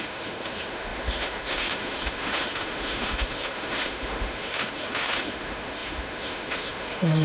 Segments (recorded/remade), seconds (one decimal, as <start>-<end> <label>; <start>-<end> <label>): 0.0-7.2 remade